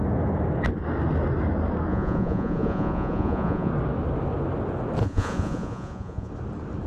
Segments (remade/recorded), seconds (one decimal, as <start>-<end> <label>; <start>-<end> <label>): 0.0-1.9 recorded; 1.9-3.7 remade; 3.7-5.0 recorded; 5.0-6.3 remade; 6.3-6.9 recorded